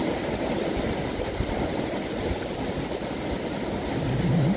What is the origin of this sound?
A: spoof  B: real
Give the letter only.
B